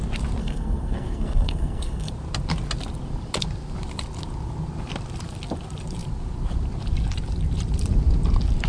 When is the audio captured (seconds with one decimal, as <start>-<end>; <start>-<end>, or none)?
0.0-0.4; 2.1-8.7